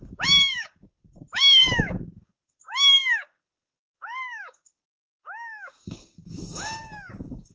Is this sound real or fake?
fake